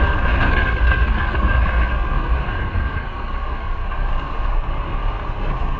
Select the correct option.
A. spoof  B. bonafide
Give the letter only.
A